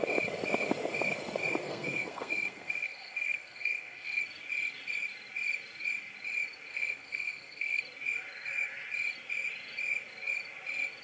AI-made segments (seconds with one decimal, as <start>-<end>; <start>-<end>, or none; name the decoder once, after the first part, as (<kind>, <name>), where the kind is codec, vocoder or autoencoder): 1.6-4.2 (codec, SNAC); 6.7-7.8